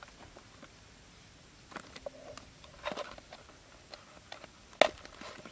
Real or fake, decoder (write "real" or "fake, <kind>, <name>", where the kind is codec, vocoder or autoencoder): real